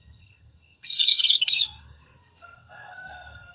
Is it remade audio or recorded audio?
remade